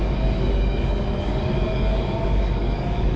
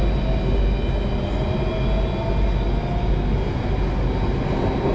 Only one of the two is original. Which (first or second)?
second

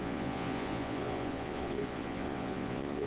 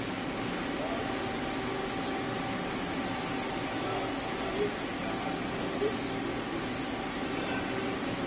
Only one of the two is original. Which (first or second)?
second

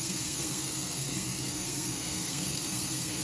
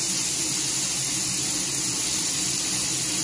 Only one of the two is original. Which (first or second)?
second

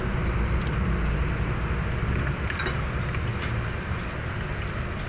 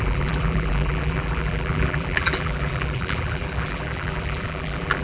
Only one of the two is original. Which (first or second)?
first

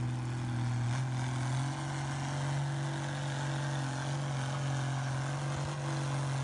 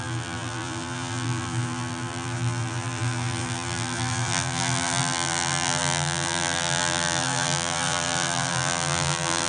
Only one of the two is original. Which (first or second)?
first